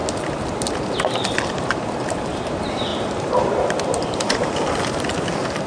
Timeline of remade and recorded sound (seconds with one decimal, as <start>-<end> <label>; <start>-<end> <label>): 0.0-2.9 recorded; 2.9-5.1 remade; 5.1-5.7 recorded